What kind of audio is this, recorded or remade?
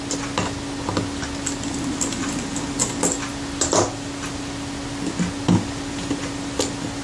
recorded